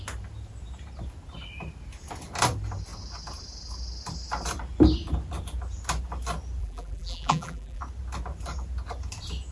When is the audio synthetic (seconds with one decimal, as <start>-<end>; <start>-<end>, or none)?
6.6-7.8